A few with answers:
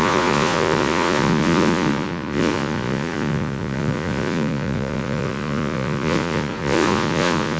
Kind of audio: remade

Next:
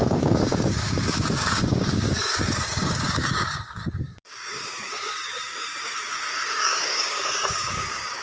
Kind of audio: remade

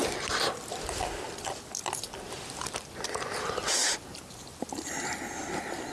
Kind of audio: recorded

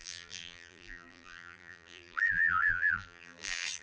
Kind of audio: remade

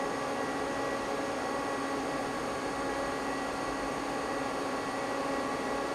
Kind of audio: recorded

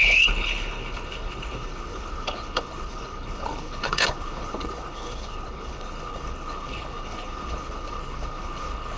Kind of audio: remade